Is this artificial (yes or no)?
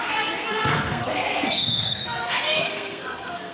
yes